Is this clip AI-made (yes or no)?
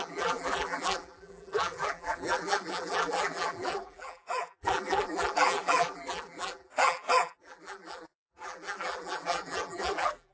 yes